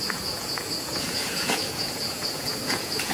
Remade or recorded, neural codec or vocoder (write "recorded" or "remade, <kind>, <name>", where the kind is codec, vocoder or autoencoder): remade, vocoder, Vocos